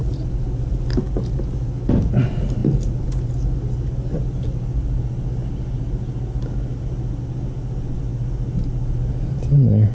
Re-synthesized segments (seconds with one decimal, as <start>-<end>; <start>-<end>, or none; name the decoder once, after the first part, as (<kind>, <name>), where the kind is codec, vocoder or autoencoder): none